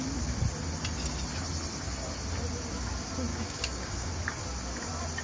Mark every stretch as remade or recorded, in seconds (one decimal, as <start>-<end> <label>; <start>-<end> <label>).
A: 0.0-3.3 recorded; 3.3-4.1 remade; 4.1-5.2 recorded